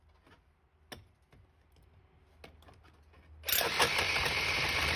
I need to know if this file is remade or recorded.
recorded